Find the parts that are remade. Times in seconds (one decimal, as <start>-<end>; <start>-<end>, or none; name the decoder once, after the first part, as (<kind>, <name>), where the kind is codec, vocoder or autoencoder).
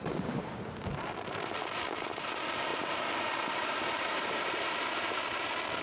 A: 0.0-5.8 (vocoder, BigVGAN v2)